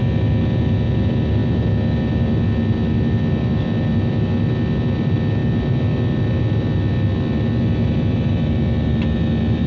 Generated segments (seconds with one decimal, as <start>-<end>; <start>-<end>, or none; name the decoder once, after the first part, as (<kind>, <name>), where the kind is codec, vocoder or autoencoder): none